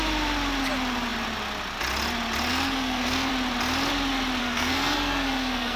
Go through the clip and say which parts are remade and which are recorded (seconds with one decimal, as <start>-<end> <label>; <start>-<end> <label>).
0.0-2.5 recorded; 2.5-3.3 remade; 3.3-4.4 recorded; 4.4-5.8 remade